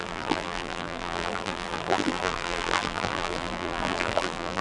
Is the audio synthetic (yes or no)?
yes